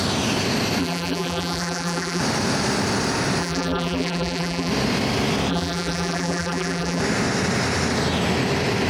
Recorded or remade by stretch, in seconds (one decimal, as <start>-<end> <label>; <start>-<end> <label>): 0.0-0.8 recorded; 0.8-2.2 remade; 2.2-3.4 recorded; 3.4-4.7 remade; 4.7-5.5 recorded; 5.5-7.0 remade; 7.0-8.9 recorded